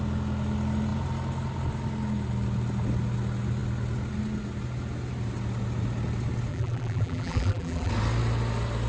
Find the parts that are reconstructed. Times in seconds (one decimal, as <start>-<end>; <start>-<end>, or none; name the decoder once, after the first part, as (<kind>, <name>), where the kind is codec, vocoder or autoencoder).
6.5-7.9 (vocoder, BigVGAN v2)